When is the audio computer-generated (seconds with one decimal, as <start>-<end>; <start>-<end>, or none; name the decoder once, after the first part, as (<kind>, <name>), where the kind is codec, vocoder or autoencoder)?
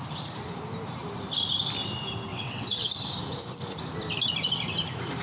2.3-2.9 (vocoder, WaveNeXt)